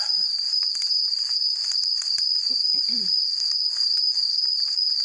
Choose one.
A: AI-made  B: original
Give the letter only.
B